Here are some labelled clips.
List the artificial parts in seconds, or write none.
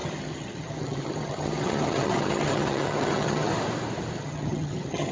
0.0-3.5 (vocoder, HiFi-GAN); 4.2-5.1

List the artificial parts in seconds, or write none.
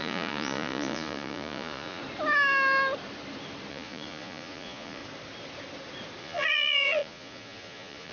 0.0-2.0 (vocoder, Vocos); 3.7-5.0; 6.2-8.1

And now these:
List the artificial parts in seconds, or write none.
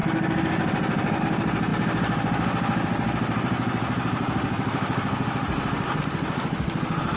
1.2-7.2 (vocoder, BigVGAN v2)